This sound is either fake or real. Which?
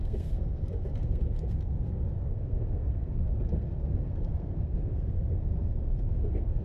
fake